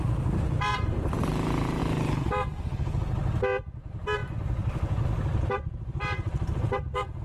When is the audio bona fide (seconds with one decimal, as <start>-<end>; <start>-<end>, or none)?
0.0-0.7; 1.8-4.2